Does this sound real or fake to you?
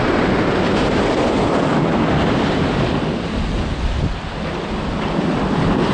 real